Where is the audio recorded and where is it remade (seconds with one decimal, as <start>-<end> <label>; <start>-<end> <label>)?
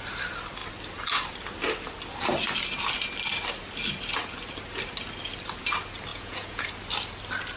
0.0-6.1 recorded; 6.1-6.7 remade; 6.7-7.6 recorded